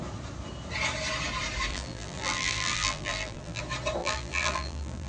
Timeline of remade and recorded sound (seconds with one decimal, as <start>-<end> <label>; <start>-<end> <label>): 0.0-1.7 recorded; 1.7-3.6 remade; 3.6-4.0 recorded; 4.0-5.1 remade